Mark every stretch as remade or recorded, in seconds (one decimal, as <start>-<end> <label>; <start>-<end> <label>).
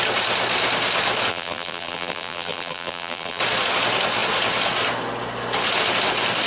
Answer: 0.0-1.3 recorded; 1.3-3.4 remade; 3.4-6.5 recorded